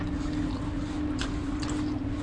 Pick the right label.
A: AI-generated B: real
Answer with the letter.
B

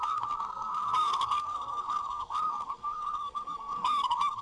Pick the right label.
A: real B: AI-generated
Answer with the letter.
B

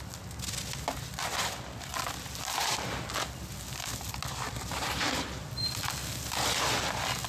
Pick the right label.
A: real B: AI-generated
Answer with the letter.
A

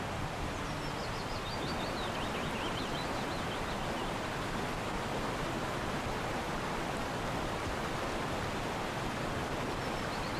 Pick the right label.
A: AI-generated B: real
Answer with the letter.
B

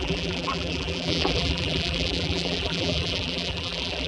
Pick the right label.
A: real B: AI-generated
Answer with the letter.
B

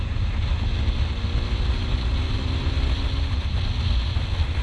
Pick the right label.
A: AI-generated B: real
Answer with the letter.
B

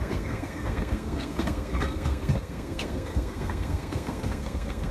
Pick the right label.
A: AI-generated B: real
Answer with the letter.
A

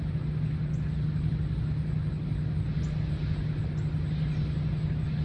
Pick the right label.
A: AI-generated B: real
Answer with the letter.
B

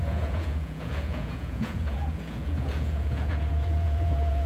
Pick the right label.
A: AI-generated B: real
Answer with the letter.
A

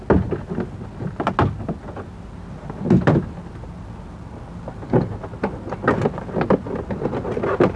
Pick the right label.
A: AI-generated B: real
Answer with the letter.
B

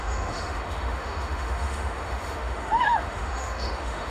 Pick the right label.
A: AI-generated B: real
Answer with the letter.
A